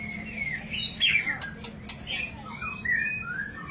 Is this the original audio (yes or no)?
yes